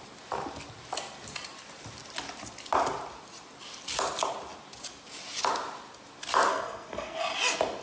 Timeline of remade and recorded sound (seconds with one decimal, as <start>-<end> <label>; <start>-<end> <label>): 0.0-6.5 recorded; 6.5-7.2 remade; 7.2-7.8 recorded